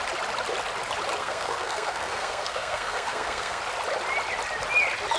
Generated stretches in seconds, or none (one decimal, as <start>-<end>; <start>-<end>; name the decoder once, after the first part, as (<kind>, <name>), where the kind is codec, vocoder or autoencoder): 1.2-3.6 (codec, SNAC)